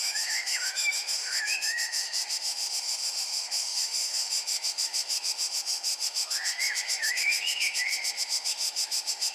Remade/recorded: remade